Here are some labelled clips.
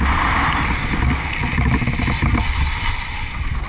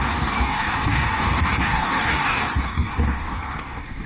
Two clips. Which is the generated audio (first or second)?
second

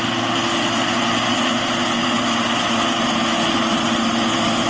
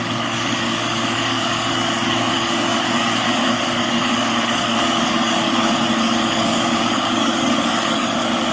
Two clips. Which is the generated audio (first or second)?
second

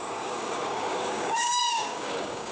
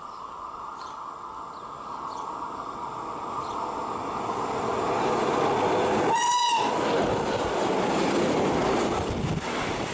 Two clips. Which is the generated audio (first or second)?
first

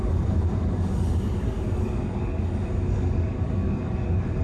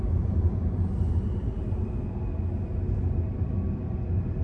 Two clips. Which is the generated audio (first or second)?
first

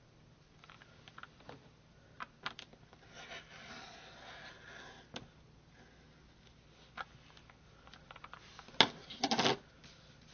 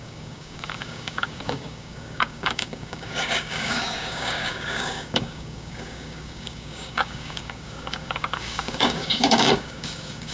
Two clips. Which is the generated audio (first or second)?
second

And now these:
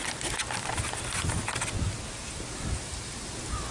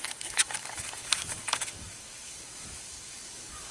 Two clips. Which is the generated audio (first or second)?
second